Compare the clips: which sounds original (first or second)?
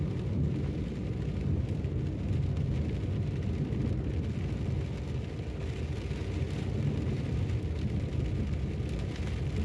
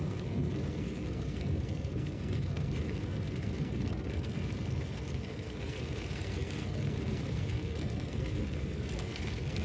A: first